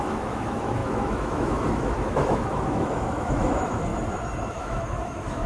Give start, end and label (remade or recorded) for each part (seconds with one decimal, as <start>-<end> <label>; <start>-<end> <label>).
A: 0.0-3.9 remade; 3.9-4.5 recorded; 4.5-5.5 remade